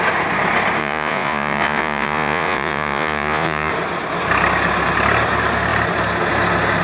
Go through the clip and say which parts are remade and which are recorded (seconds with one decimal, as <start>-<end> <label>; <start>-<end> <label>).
0.0-0.8 recorded; 0.8-3.7 remade; 3.7-6.8 recorded